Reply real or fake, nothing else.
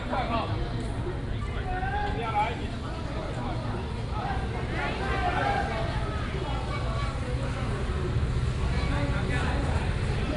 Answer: real